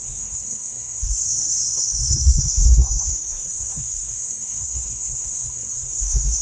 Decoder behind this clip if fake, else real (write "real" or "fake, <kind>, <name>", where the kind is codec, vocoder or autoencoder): fake, codec, SNAC